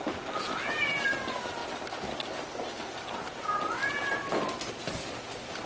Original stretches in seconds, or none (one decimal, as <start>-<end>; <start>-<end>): 0.0-5.7